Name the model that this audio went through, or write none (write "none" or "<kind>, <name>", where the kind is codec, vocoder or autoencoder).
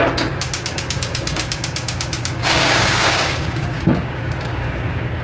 codec, DAC